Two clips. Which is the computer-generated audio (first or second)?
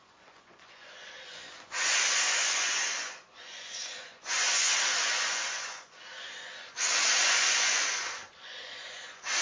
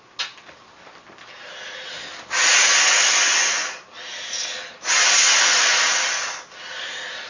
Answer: first